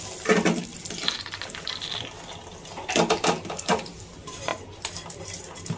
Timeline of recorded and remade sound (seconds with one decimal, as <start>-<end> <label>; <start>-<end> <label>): 0.0-4.5 remade; 4.5-5.2 recorded; 5.2-5.8 remade